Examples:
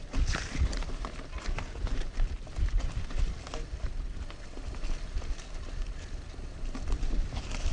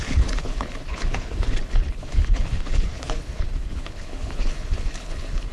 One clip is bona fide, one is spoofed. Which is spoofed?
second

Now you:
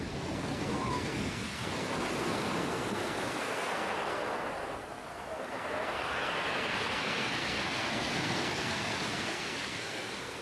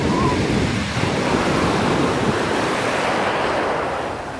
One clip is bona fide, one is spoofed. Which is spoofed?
first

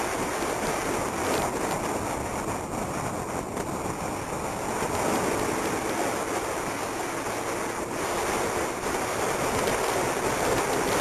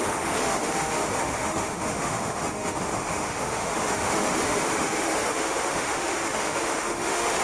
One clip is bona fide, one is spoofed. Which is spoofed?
second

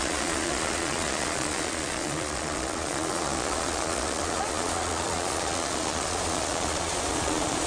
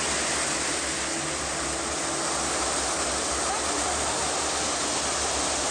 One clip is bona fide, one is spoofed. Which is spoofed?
first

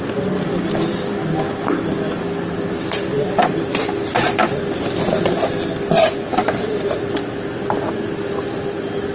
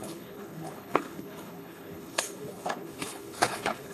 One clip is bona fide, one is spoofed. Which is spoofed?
second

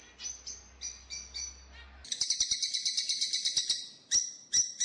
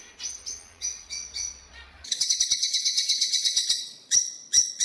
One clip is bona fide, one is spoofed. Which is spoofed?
second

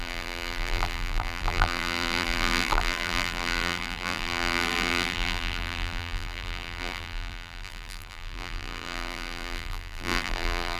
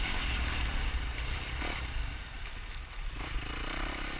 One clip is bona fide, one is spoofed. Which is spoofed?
first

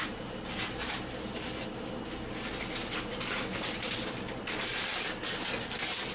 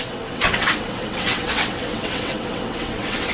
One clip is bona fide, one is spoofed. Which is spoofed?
second